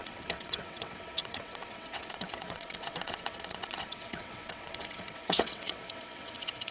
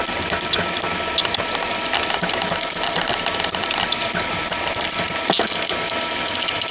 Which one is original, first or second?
second